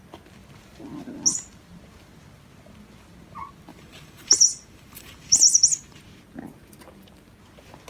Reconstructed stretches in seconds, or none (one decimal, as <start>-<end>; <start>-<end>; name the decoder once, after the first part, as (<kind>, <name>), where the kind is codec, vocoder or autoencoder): 3.7-6.0 (vocoder, BigVGAN v2)